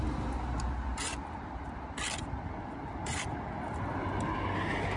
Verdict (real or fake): real